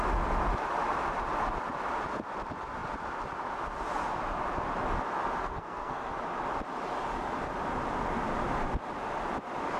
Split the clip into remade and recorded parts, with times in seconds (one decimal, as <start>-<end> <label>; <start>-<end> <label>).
0.0-5.4 recorded; 5.4-6.1 remade; 6.1-9.8 recorded